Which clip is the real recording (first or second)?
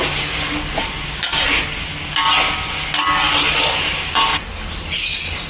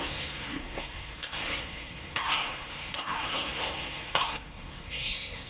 first